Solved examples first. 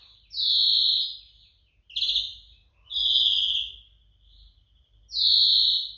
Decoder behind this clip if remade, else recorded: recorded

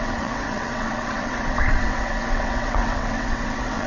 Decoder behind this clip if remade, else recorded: remade, vocoder, WaveNeXt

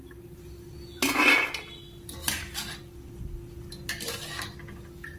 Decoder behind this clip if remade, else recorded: recorded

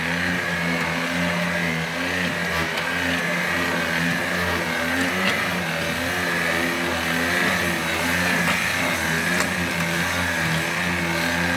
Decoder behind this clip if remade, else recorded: recorded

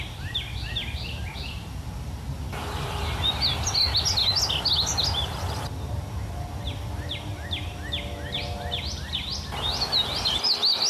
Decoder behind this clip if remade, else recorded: recorded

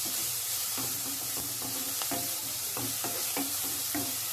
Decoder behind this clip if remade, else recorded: remade, vocoder, BigVGAN v2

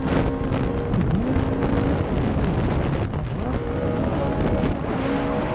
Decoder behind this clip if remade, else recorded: recorded